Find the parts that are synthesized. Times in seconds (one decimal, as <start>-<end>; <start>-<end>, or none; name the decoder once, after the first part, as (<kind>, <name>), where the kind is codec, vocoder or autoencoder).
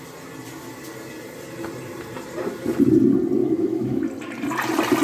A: 3.4-4.0 (autoencoder, DAC-VAE)